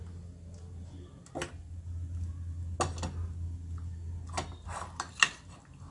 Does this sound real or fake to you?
real